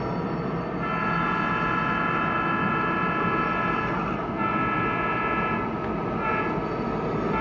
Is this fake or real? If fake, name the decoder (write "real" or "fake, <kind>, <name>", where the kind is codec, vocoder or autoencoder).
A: real